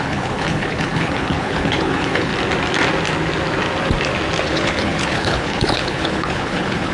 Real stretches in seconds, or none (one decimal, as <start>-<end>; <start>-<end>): 2.3-4.5